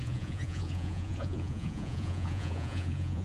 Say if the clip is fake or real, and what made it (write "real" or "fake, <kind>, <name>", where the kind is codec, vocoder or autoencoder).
fake, vocoder, Vocos